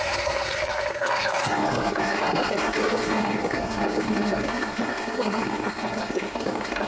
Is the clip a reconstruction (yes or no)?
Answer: yes